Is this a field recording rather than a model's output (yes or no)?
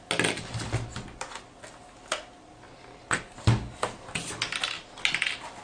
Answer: yes